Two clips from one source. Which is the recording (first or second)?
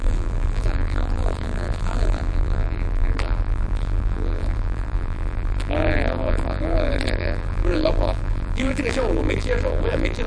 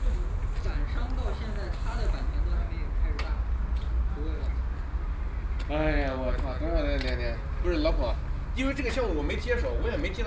second